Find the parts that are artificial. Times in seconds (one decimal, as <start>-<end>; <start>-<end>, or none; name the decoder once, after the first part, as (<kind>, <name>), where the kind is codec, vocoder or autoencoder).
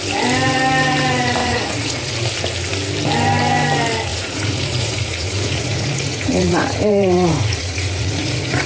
1.4-2.1 (vocoder, Vocos); 4.1-8.7